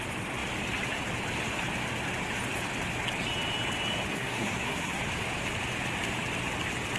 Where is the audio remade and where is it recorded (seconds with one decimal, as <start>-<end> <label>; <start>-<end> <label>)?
0.0-4.1 recorded; 4.1-5.0 remade; 5.0-7.0 recorded

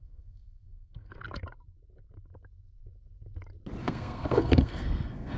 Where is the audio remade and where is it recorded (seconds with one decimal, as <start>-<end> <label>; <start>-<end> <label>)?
0.0-1.2 remade; 1.2-3.8 recorded; 3.8-5.4 remade

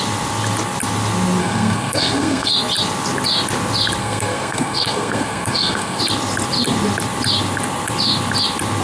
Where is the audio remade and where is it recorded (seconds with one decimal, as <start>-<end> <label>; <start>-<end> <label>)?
0.0-1.4 recorded; 1.4-2.5 remade; 2.5-4.0 recorded; 4.0-6.0 remade; 6.0-8.8 recorded

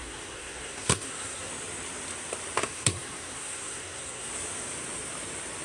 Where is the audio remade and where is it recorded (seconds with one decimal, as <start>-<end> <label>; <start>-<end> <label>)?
0.0-1.5 remade; 1.5-2.6 recorded; 2.6-4.3 remade; 4.3-5.6 recorded

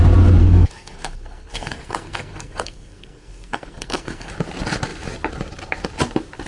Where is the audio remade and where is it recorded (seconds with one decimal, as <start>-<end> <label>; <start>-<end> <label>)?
0.0-0.4 recorded; 0.4-4.3 remade; 4.3-6.5 recorded

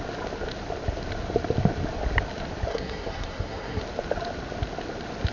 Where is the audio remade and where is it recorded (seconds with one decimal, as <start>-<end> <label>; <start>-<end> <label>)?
0.0-2.7 recorded; 2.7-3.8 remade; 3.8-5.3 recorded

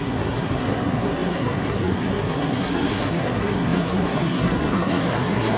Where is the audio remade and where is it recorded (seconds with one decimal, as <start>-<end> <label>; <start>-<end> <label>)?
0.0-5.6 remade